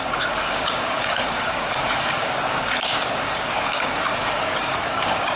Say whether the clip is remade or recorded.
remade